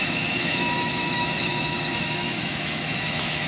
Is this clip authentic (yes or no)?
no